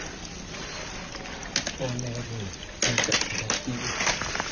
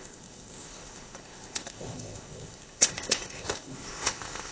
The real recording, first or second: first